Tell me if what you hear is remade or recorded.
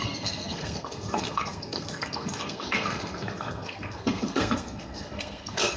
remade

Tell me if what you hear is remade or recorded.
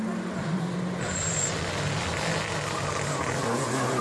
recorded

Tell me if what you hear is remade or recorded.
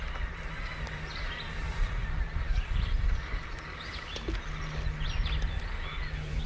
recorded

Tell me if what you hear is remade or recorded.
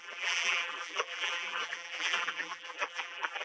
remade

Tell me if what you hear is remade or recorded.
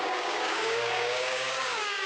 remade